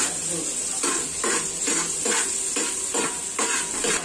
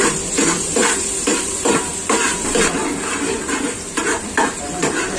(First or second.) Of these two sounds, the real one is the first